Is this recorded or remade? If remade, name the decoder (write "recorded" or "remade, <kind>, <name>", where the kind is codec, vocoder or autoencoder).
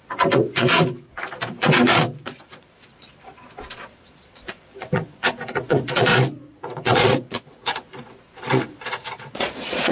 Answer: remade, vocoder, Vocos